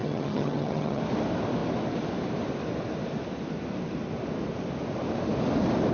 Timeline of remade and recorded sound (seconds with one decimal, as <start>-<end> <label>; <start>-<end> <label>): 0.0-1.0 remade; 1.0-5.9 recorded

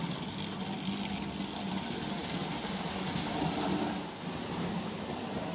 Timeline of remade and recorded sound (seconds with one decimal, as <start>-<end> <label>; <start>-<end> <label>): 0.0-5.5 recorded

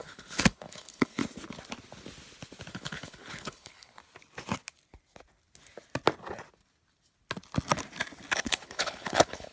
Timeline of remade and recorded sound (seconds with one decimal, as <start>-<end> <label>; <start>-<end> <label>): 0.0-1.2 remade; 1.2-2.7 recorded; 2.7-4.0 remade; 4.0-8.4 recorded; 8.4-9.5 remade

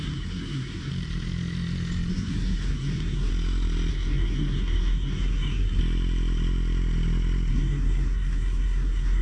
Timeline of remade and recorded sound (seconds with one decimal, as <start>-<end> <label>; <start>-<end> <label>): 0.0-0.9 remade; 0.9-2.1 recorded; 2.1-3.3 remade; 3.3-3.9 recorded; 3.9-5.8 remade; 5.8-7.5 recorded; 7.5-9.2 remade

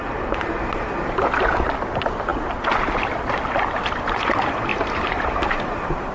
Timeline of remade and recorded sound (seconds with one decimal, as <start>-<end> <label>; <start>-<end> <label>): 0.0-0.7 remade; 0.7-4.7 recorded; 4.7-6.1 remade

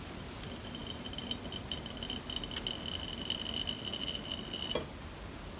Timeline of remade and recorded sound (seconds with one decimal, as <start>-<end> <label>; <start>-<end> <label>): 0.0-5.6 recorded

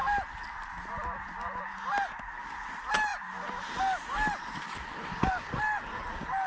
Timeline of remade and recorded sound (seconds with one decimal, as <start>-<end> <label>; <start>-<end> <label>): 0.0-6.5 recorded

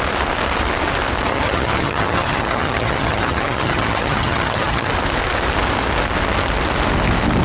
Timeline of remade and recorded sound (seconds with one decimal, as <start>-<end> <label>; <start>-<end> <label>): 0.0-1.3 recorded; 1.3-4.9 remade; 4.9-7.4 recorded